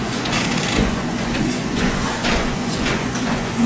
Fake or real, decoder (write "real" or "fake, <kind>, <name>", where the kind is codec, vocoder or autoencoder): fake, vocoder, Vocos